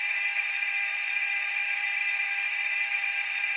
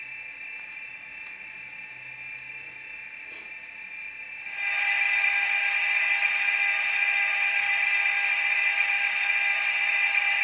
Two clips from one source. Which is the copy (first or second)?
first